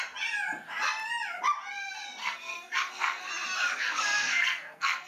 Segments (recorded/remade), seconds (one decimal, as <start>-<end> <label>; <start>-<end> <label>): 0.0-2.2 recorded; 2.2-3.3 remade; 3.3-3.7 recorded; 3.7-5.1 remade